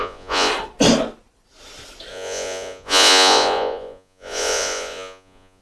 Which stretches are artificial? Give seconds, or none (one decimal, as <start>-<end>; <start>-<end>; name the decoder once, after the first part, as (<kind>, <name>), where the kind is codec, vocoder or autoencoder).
0.0-0.5 (vocoder, Vocos); 2.1-5.6